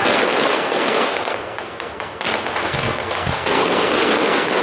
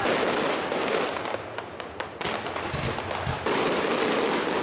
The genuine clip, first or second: second